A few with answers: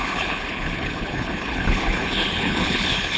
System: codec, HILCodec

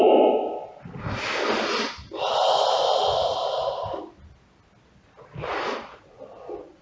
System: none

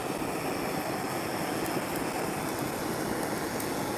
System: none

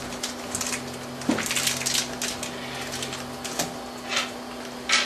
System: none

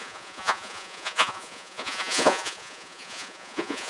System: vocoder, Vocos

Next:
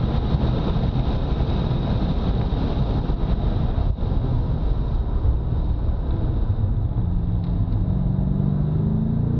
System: none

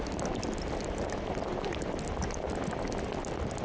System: none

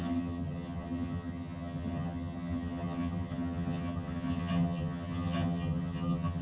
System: vocoder, HiFi-GAN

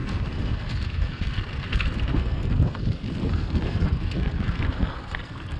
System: codec, SNAC